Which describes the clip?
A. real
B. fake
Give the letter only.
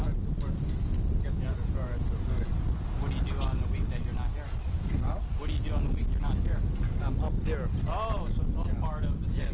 A